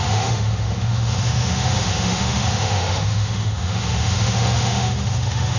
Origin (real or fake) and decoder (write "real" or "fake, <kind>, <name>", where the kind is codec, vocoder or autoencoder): fake, autoencoder, DAC-VAE